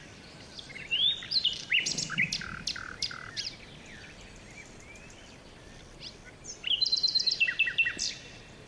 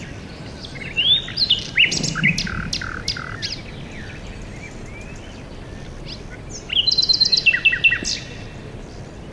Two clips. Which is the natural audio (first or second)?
second